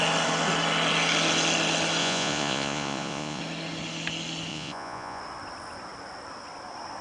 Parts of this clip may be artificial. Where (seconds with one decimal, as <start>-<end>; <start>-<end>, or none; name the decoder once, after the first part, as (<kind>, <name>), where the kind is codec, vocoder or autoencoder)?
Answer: 2.0-3.4 (vocoder, Vocos); 4.5-5.2